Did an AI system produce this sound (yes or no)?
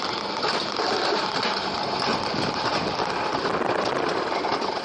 no